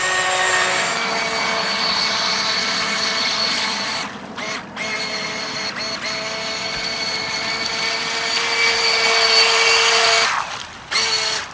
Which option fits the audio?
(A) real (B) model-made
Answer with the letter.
A